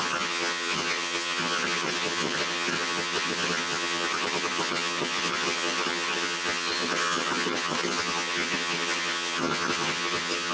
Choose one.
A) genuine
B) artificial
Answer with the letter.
B